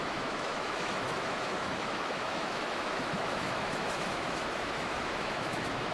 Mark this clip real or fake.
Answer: fake